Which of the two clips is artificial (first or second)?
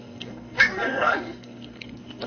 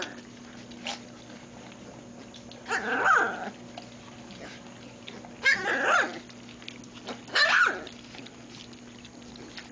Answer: first